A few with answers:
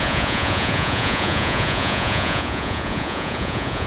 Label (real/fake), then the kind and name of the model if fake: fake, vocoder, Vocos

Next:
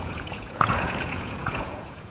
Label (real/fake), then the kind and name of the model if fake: fake, vocoder, Vocos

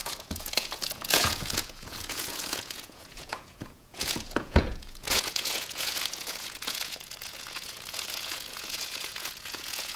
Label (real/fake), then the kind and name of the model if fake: fake, vocoder, Vocos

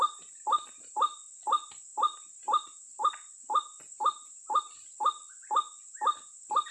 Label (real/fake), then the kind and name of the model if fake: real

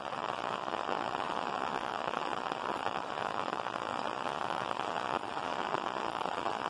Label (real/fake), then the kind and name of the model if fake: fake, vocoder, Vocos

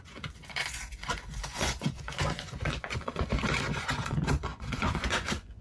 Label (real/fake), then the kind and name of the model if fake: fake, vocoder, Vocos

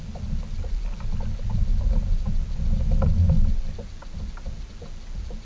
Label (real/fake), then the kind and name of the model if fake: real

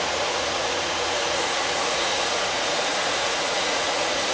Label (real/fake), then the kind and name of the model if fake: fake, vocoder, Vocos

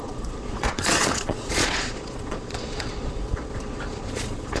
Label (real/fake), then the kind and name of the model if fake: fake, vocoder, Vocos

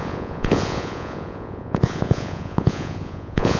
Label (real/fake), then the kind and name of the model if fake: fake, vocoder, Vocos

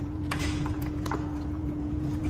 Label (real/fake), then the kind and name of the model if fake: fake, vocoder, Vocos